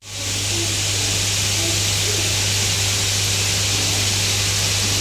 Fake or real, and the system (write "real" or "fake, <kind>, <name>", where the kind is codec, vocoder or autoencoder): real